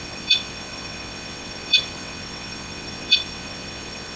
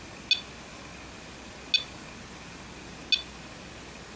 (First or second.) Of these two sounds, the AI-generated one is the first